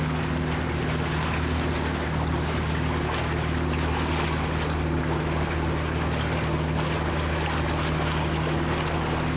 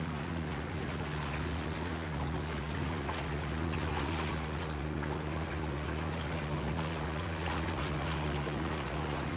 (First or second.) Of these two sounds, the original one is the first